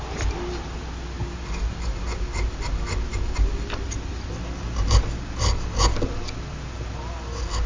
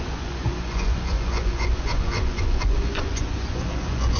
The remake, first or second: second